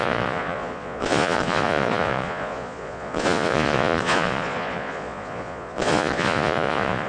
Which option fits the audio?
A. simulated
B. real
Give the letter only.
A